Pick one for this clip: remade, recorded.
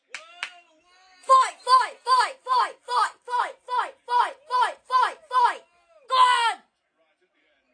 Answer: recorded